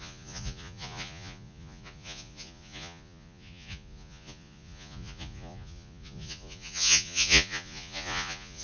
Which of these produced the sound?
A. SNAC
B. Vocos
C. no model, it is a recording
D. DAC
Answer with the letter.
B